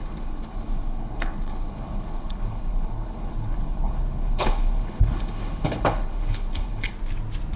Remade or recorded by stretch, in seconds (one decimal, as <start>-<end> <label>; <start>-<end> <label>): 0.0-6.9 remade; 6.9-7.6 recorded